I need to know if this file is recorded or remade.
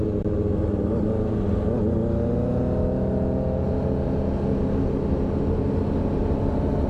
recorded